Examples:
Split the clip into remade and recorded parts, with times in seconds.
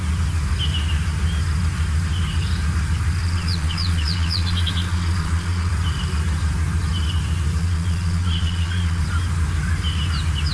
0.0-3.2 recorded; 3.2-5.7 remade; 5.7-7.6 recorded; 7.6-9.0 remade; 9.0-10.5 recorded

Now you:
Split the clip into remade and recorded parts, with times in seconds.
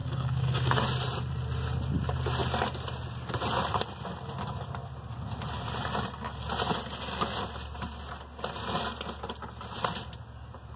0.0-0.8 remade; 0.8-10.8 recorded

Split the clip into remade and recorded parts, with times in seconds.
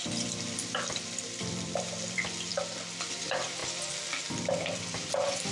0.0-2.5 remade; 2.5-3.2 recorded; 3.2-3.6 remade; 3.6-4.6 recorded; 4.6-5.5 remade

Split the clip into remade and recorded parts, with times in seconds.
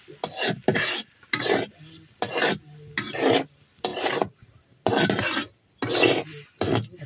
0.0-3.9 recorded; 3.9-4.9 remade; 4.9-7.1 recorded